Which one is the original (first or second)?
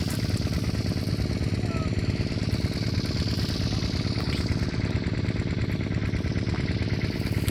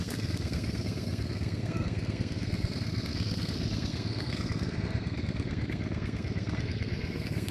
first